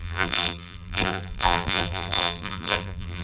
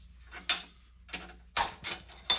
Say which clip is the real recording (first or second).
second